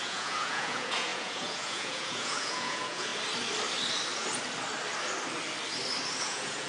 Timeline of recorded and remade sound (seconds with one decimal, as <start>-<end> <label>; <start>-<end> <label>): 0.0-3.1 remade; 3.1-6.2 recorded; 6.2-6.7 remade